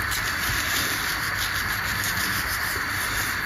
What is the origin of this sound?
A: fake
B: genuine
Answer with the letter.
B